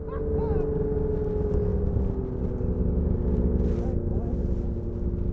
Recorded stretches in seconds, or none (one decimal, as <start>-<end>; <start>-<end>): 0.0-5.3